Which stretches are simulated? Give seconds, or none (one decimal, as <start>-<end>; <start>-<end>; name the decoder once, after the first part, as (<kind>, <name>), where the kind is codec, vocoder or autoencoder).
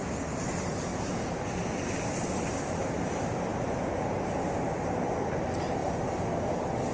0.9-1.9 (vocoder, BigVGAN v2); 3.5-4.3